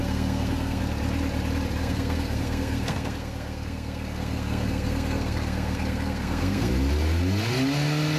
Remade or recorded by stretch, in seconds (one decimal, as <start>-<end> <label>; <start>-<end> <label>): 0.0-0.8 remade; 0.8-1.8 recorded; 1.8-6.7 remade; 6.7-8.2 recorded